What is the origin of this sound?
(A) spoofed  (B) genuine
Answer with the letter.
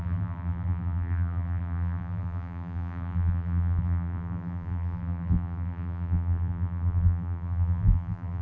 A